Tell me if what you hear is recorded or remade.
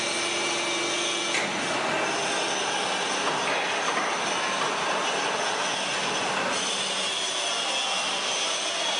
recorded